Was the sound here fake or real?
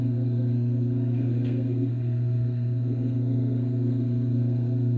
fake